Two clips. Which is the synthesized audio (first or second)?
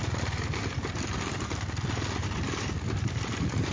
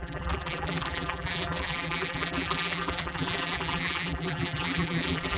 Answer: second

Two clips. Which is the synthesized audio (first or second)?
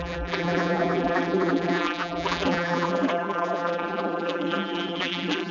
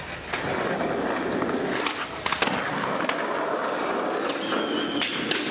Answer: first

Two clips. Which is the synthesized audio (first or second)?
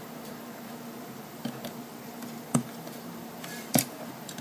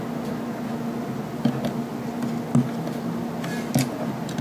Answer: first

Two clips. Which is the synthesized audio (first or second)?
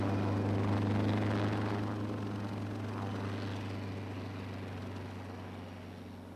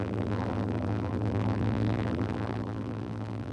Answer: second